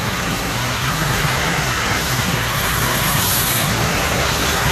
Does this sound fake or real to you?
fake